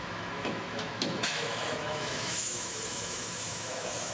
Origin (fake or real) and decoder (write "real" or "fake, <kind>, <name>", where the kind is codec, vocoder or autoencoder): fake, autoencoder, DAC-VAE